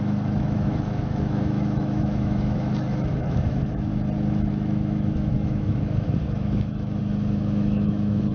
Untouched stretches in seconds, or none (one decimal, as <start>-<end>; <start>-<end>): 3.9-4.5